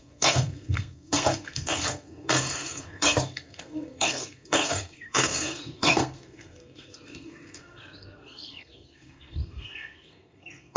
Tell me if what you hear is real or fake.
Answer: fake